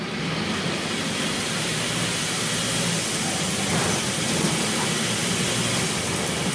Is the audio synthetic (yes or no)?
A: no